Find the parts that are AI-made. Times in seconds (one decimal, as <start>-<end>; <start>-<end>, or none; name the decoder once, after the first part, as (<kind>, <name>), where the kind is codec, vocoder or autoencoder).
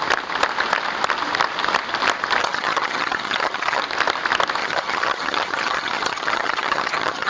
2.4-3.8 (vocoder, HiFi-GAN); 4.6-7.3